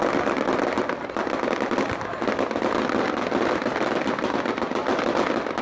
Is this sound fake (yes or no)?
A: no